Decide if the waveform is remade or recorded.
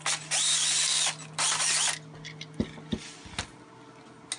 recorded